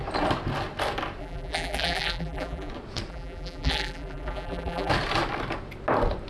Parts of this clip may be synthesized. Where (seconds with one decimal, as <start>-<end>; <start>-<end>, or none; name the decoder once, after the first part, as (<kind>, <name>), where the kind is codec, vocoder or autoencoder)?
1.2-2.7 (vocoder, BigVGAN v2); 3.1-4.9